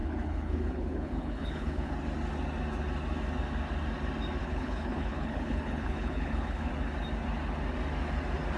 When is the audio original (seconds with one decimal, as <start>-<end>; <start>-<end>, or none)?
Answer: 1.9-4.4; 6.7-8.6